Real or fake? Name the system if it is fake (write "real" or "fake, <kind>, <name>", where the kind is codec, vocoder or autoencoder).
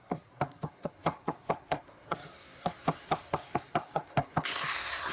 fake, codec, SNAC